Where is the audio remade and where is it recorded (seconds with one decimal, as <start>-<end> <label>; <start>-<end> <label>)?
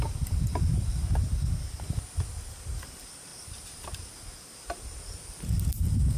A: 0.0-6.2 recorded